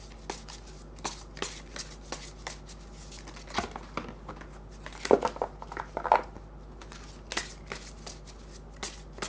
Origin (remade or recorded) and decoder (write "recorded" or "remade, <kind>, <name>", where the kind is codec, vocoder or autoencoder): recorded